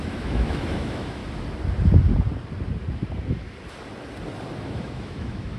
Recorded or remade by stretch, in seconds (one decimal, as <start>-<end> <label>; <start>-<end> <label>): 0.0-1.2 remade; 1.2-4.6 recorded; 4.6-5.6 remade